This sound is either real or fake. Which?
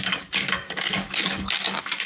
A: fake